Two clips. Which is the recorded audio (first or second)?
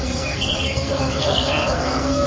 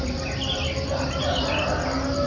second